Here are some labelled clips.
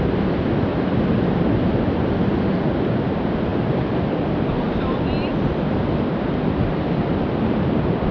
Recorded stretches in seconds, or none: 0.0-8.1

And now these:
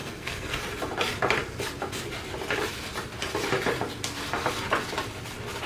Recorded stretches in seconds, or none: 0.6-5.7

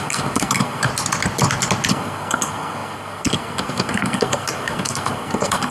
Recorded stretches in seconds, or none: 0.9-1.9

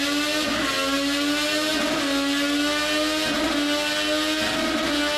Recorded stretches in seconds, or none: 0.0-5.2

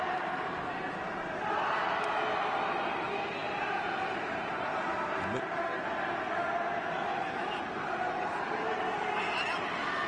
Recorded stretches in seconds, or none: 0.0-10.1

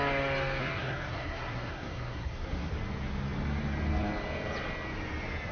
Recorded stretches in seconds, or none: 0.0-0.6; 2.7-5.5